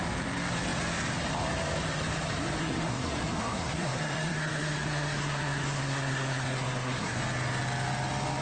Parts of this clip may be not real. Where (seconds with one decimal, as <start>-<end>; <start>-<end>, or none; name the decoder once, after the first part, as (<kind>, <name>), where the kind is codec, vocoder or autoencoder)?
2.6-7.2 (codec, SNAC)